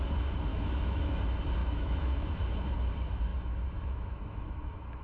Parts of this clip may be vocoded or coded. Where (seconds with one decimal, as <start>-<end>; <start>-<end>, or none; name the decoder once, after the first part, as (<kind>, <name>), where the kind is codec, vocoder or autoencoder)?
0.5-1.2 (autoencoder, DAC-VAE); 1.6-2.2; 3.3-5.0